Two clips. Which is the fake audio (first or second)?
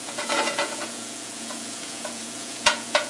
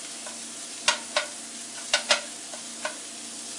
first